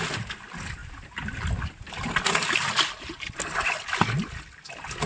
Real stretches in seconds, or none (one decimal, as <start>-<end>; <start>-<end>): 0.0-5.1